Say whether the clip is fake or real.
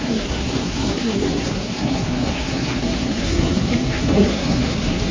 fake